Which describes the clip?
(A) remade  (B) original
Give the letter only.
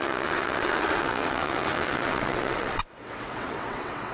A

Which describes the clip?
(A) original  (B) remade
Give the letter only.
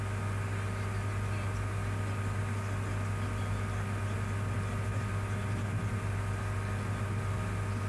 A